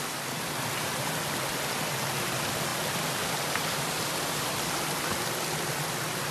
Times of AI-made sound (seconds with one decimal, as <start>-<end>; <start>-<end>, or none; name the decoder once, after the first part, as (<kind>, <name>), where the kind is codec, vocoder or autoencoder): none